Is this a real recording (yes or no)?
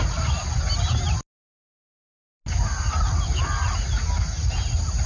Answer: yes